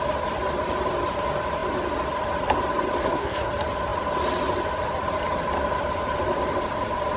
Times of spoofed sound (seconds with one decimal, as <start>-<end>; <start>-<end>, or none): 3.0-3.5